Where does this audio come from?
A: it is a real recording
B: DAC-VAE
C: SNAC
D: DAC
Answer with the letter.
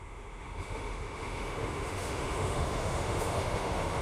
B